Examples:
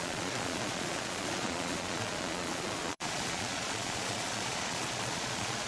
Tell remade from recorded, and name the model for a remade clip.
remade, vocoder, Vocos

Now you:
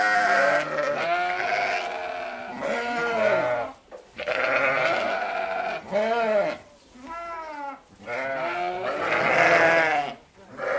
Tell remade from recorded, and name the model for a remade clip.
recorded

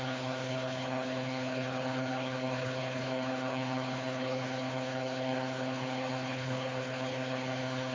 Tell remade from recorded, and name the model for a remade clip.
remade, codec, HILCodec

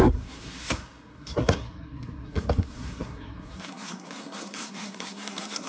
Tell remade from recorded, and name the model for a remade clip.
remade, codec, SNAC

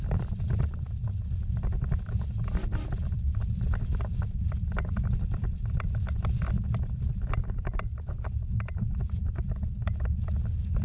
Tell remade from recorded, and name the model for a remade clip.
recorded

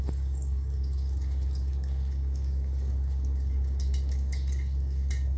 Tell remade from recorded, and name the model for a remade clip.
remade, codec, DAC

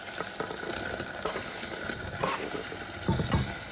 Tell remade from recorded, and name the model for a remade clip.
recorded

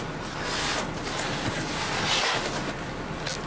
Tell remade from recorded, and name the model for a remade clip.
recorded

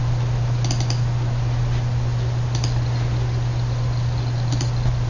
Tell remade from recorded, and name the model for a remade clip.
recorded